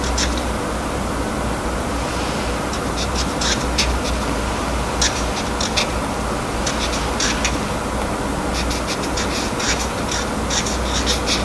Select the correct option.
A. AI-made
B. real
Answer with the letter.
B